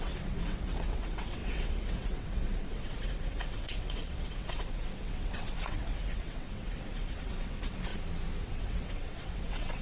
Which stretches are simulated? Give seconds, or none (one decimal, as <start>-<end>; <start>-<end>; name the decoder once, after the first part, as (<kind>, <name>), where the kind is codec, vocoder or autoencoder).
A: 0.0-7.9 (vocoder, WaveNeXt); 8.4-9.8